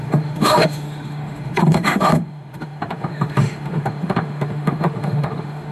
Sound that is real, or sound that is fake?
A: fake